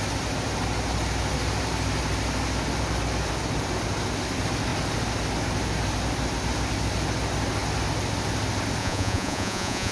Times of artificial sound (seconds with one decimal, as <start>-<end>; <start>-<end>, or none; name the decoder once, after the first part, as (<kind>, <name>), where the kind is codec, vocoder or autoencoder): 8.8-9.9 (vocoder, Vocos)